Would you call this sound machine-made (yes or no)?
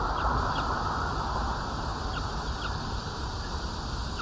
no